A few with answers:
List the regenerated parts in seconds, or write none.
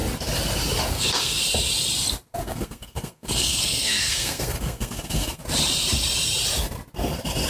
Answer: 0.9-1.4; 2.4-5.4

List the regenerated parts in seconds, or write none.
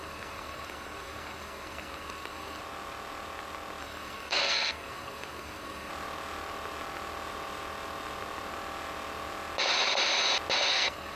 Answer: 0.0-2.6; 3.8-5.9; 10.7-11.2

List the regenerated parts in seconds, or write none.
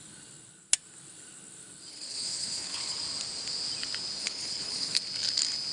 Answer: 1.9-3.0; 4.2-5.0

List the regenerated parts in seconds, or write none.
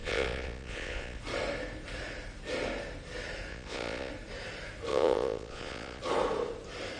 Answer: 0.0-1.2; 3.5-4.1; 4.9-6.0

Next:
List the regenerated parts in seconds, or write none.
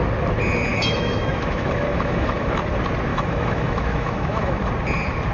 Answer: 0.7-2.6; 3.1-4.7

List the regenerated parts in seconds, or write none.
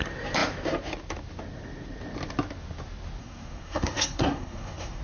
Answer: 3.2-5.0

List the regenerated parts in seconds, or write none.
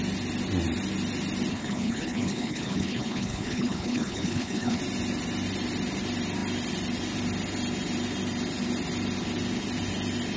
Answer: 1.5-4.8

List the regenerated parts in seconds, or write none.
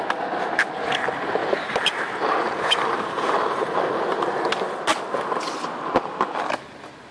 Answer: 1.4-4.4